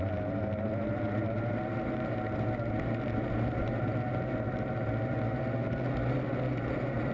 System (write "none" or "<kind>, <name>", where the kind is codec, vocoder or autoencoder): none